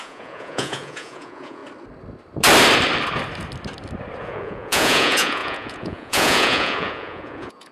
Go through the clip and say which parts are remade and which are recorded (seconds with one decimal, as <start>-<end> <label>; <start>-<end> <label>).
0.0-1.6 remade; 1.6-4.2 recorded; 4.2-7.7 remade